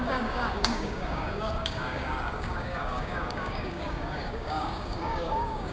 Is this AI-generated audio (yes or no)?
yes